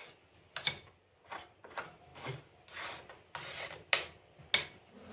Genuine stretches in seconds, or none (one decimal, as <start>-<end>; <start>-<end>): 0.0-5.1